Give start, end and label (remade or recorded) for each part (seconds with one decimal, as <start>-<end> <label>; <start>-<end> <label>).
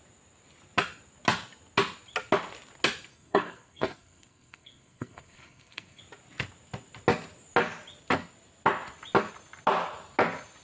0.0-3.1 recorded; 3.1-6.0 remade; 6.0-10.6 recorded